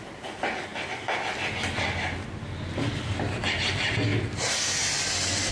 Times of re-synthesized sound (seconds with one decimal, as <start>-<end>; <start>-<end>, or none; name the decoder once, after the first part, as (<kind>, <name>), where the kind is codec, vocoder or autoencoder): none